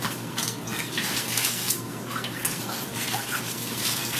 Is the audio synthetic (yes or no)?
yes